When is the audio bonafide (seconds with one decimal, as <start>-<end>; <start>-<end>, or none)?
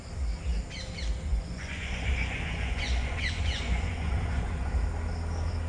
0.0-1.3; 4.7-5.7